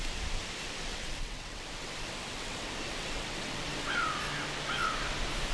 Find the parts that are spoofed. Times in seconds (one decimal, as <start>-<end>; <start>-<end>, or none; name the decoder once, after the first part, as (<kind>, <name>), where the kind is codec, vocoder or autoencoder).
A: 0.9-3.9 (vocoder, WaveNeXt)